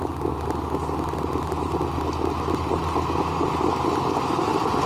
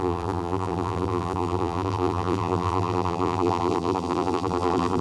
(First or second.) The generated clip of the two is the second